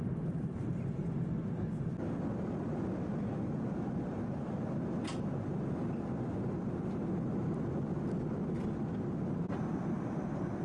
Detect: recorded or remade recorded